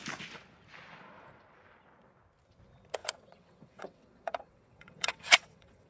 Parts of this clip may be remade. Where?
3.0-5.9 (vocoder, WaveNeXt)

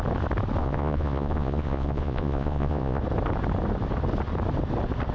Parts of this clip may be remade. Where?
0.6-3.0 (vocoder, Vocos)